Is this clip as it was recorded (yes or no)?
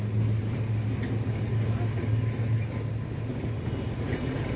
yes